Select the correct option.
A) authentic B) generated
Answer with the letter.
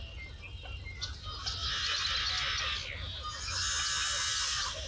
A